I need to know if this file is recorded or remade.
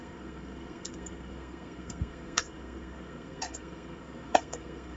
remade